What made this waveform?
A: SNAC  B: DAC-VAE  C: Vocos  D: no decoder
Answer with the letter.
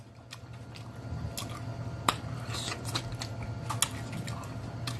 D